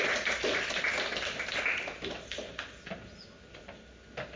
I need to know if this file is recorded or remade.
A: recorded